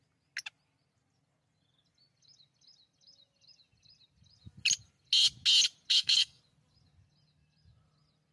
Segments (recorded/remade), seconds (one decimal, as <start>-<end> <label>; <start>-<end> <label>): 0.0-5.9 recorded; 5.9-6.4 remade; 6.4-8.3 recorded